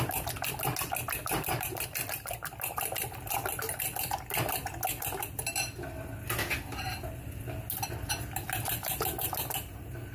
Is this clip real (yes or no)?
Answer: yes